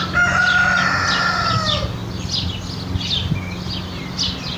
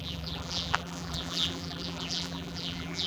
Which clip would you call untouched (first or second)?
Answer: first